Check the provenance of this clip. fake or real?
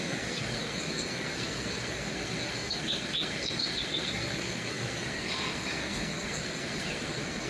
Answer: fake